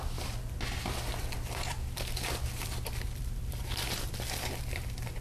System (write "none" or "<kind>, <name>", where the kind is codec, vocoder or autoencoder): vocoder, BigVGAN v2